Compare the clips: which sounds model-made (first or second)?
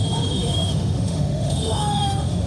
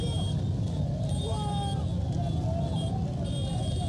first